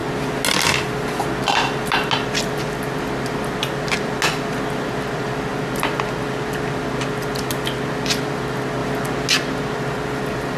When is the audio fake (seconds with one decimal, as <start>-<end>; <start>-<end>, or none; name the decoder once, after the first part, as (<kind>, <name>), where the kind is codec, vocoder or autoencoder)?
none